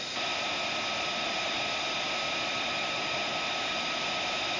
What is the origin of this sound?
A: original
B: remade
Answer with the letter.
A